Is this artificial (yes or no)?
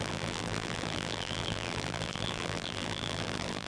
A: yes